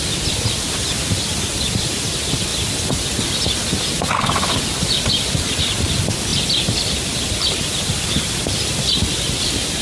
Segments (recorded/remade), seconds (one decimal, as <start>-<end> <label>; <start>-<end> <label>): 0.0-9.8 recorded